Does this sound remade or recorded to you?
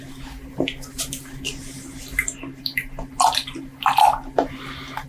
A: recorded